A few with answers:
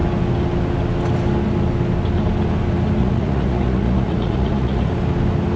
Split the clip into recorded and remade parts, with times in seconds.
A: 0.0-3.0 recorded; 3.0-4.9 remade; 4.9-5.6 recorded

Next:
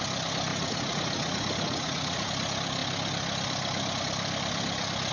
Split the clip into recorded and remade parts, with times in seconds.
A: 0.0-0.5 recorded; 0.5-2.3 remade; 2.3-5.1 recorded